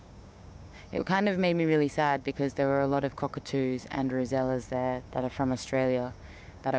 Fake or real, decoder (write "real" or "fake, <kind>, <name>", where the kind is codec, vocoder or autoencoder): fake, codec, DAC